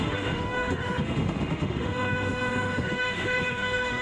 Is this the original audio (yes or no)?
no